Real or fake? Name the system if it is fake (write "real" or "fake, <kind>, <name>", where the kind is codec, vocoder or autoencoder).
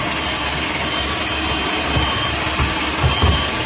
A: real